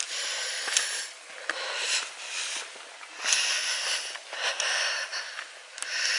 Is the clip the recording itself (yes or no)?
yes